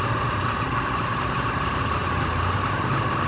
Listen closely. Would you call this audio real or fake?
real